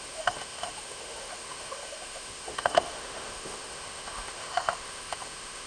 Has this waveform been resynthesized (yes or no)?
yes